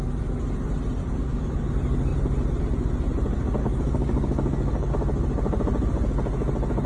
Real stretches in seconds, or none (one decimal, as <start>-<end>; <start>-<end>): 0.0-1.0; 1.7-3.6; 4.9-6.9